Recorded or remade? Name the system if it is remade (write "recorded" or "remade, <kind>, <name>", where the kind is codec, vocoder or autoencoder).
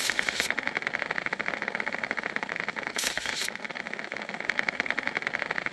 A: remade, autoencoder, DAC-VAE